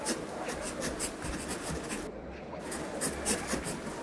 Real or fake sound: real